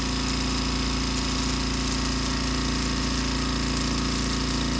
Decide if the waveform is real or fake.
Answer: real